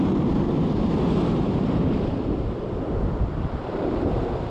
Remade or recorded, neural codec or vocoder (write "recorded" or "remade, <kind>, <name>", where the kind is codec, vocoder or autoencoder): remade, vocoder, BigVGAN v2